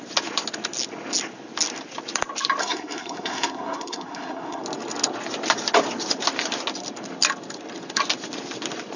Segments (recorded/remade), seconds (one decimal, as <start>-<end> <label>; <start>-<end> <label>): 0.0-2.6 recorded; 2.6-4.6 remade; 4.6-9.0 recorded